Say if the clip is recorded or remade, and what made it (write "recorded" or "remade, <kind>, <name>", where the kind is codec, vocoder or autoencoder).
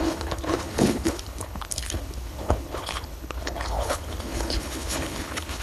remade, codec, HILCodec